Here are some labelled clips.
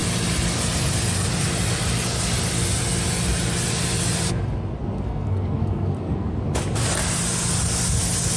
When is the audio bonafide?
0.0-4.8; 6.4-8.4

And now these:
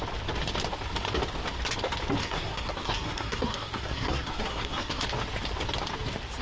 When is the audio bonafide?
0.0-2.2; 5.0-6.4

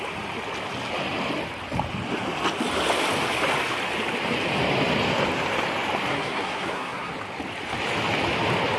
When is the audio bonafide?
0.0-6.1; 7.1-8.8

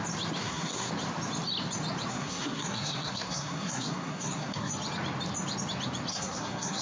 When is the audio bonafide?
0.0-0.4; 0.9-2.1; 4.7-6.1

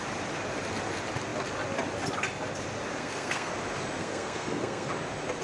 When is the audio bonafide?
0.0-3.0; 3.5-4.0; 4.9-5.4

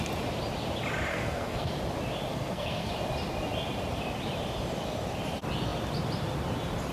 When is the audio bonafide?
0.0-1.1; 1.7-2.3; 2.9-6.9

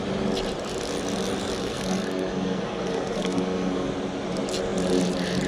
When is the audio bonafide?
0.0-1.6; 3.9-5.5